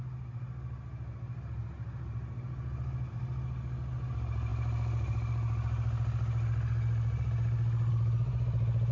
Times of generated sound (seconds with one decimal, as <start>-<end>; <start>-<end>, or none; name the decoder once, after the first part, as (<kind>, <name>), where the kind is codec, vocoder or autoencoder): none